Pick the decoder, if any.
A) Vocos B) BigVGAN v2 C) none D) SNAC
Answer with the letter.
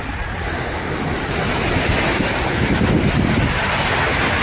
C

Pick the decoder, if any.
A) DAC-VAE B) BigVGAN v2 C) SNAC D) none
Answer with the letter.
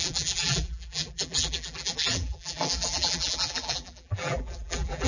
B